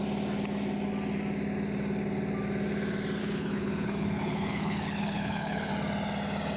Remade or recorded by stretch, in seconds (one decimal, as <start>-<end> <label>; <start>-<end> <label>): 0.0-3.2 recorded; 3.2-5.7 remade; 5.7-6.6 recorded